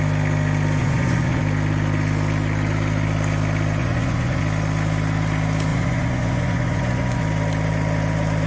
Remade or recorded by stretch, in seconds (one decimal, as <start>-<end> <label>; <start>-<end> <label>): 0.0-0.8 recorded; 0.8-1.4 remade; 1.4-3.8 recorded; 3.8-4.4 remade; 4.4-5.7 recorded; 5.7-7.2 remade; 7.2-8.5 recorded